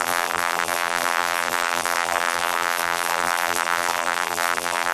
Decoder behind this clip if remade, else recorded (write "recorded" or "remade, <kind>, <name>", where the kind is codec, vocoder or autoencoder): remade, vocoder, BigVGAN v2